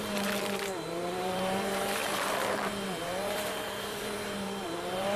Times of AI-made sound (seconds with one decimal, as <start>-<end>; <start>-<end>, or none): 0.0-5.2